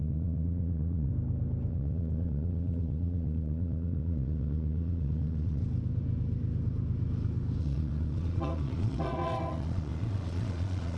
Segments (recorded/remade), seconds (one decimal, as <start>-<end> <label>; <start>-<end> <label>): 0.0-1.1 remade; 1.1-1.7 recorded; 1.7-5.6 remade; 5.6-7.6 recorded; 7.6-11.0 remade